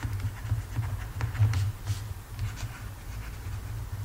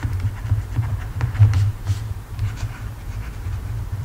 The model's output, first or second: second